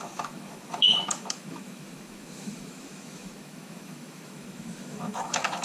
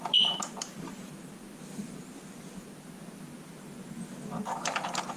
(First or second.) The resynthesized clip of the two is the first